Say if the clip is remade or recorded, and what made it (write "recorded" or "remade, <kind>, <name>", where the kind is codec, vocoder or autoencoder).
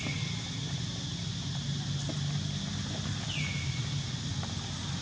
recorded